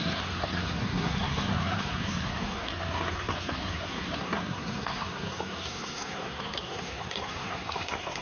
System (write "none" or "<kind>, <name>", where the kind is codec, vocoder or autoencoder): codec, SNAC